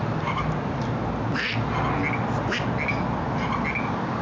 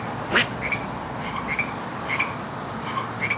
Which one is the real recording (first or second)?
first